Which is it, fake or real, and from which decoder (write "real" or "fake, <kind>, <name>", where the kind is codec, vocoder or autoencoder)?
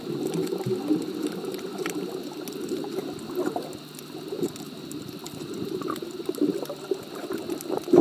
real